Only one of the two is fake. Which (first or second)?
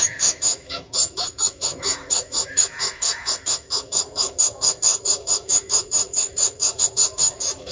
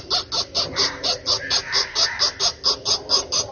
first